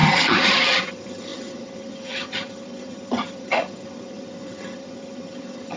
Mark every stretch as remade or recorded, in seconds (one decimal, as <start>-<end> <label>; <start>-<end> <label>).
0.0-5.8 remade